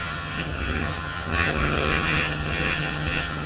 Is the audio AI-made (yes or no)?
yes